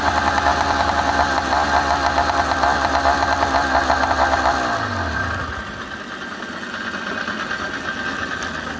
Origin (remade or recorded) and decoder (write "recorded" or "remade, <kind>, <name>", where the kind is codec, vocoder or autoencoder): recorded